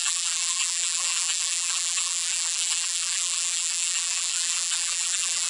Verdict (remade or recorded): remade